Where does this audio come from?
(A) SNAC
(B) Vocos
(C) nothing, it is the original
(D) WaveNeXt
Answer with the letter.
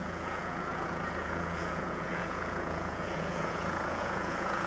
B